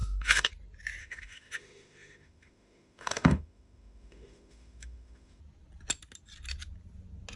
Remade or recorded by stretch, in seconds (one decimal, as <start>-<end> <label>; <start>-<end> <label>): 0.0-0.5 remade; 0.5-1.0 recorded; 1.0-5.4 remade; 5.4-7.4 recorded

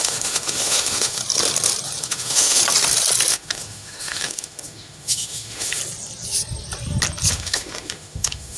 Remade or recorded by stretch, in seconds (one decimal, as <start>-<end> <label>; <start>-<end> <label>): 0.0-1.2 remade; 1.2-2.0 recorded; 2.0-2.6 remade; 2.6-3.3 recorded; 3.3-5.8 remade; 5.8-7.3 recorded; 7.3-8.6 remade